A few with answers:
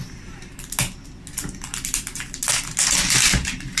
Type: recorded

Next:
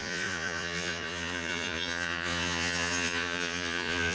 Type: remade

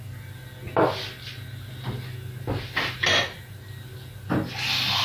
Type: recorded